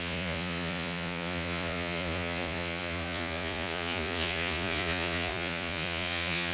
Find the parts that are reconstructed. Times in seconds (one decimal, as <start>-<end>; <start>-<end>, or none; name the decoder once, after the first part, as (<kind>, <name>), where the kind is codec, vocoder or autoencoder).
0.0-6.5 (vocoder, Vocos)